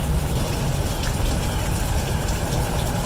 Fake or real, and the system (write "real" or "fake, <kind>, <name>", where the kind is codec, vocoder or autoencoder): real